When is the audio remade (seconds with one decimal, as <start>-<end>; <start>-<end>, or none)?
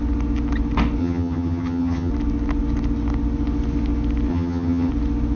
1.0-2.1; 4.3-4.9